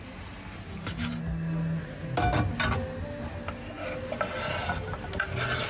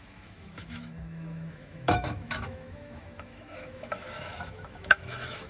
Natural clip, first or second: first